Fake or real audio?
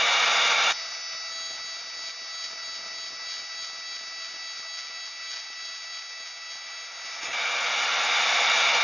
real